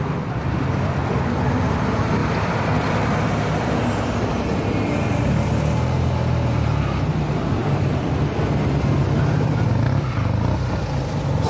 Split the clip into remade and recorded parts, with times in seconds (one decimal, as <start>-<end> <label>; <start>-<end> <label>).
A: 0.0-2.2 recorded; 2.2-3.2 remade; 3.2-7.6 recorded; 7.6-8.7 remade; 8.7-11.5 recorded